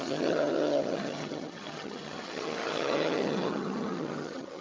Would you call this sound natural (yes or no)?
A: no